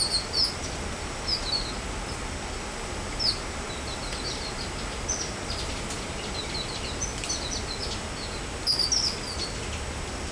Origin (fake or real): real